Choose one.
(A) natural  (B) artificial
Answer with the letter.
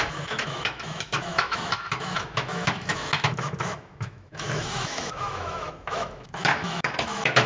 B